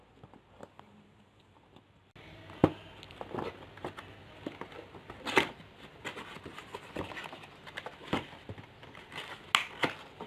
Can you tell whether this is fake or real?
real